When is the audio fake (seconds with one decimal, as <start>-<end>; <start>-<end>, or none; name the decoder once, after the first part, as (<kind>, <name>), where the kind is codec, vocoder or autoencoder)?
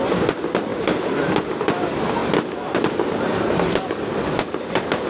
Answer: none